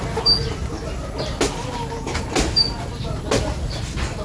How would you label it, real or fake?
real